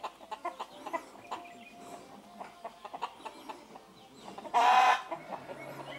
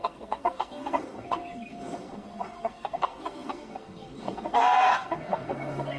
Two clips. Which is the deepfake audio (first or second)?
second